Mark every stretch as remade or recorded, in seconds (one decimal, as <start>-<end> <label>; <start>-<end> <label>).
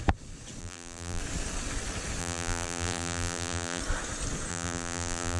0.0-0.6 recorded; 0.6-1.2 remade; 1.2-2.2 recorded; 2.2-3.8 remade; 3.8-4.5 recorded; 4.5-5.4 remade